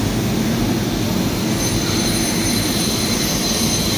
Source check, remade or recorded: recorded